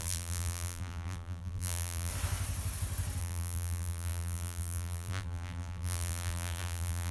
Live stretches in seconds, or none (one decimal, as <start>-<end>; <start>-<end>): 2.1-3.2